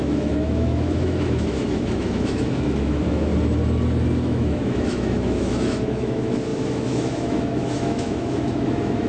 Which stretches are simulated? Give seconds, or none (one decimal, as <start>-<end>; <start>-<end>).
0.0-3.3; 4.2-9.1